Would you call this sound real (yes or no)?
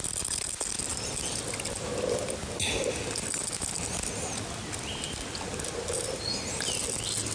yes